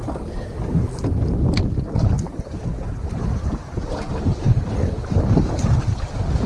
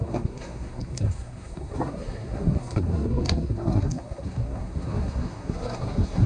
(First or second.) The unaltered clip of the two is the first